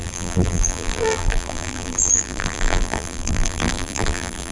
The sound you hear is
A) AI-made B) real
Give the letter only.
A